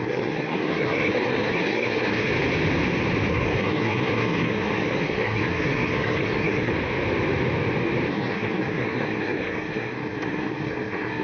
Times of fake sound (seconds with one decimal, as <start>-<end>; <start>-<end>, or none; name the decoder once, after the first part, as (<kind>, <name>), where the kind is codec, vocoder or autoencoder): 0.0-2.3 (codec, SNAC); 3.3-6.7; 8.1-11.2

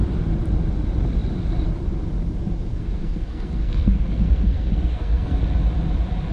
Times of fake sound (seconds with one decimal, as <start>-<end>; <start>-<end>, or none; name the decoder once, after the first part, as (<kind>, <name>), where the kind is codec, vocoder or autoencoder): 2.7-5.4 (codec, SNAC)

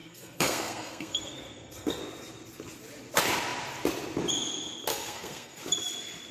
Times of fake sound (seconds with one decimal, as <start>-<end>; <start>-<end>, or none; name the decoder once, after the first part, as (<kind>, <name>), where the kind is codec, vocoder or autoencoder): 0.0-2.0 (codec, SNAC); 4.9-5.6

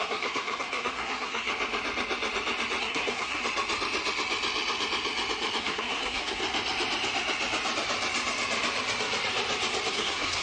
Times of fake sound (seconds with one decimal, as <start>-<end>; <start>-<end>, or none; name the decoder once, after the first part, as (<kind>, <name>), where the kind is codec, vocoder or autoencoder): 0.0-1.5 (codec, SNAC); 2.8-3.4; 5.6-6.4; 9.9-10.4

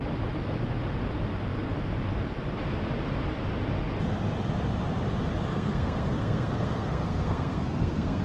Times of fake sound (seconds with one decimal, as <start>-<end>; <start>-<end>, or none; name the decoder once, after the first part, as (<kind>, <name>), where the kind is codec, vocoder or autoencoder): 5.5-8.2 (codec, SNAC)

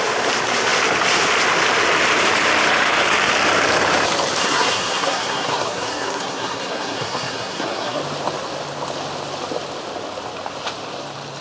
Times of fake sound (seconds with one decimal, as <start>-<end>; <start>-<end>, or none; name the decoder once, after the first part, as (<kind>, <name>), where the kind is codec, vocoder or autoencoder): 4.4-8.0 (codec, SNAC)